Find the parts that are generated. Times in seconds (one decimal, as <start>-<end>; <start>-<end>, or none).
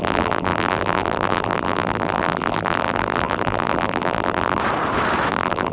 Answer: 0.0-4.6; 5.3-5.7